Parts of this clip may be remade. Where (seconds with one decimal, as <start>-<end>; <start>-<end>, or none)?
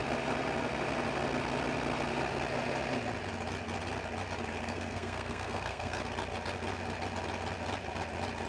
4.6-6.0